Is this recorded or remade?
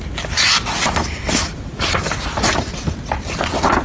recorded